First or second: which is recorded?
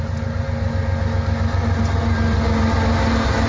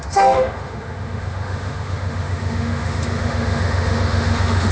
first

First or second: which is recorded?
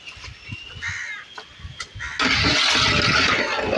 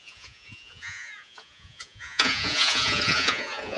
first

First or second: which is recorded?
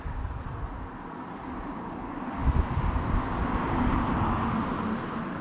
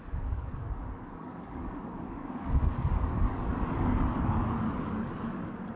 first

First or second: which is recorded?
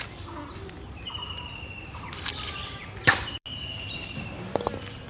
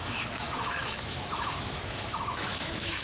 first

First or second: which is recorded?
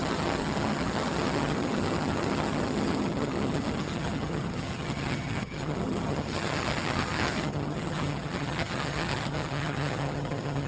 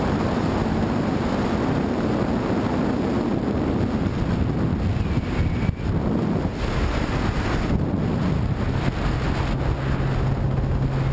second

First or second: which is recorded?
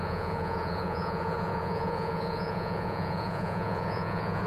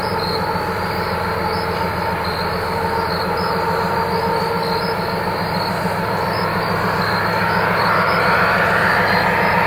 second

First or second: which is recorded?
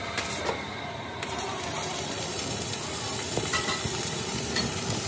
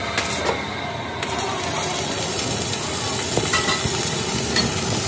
second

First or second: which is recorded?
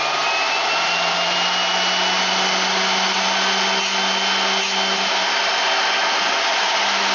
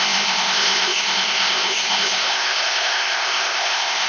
first